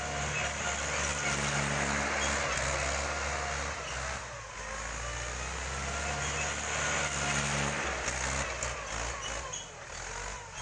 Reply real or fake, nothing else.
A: real